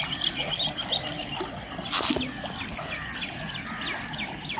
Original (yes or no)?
yes